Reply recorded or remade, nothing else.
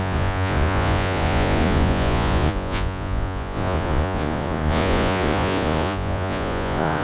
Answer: remade